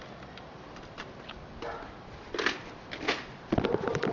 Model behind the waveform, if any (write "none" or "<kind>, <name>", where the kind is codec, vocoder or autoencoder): vocoder, BigVGAN v2